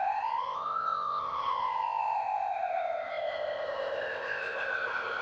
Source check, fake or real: fake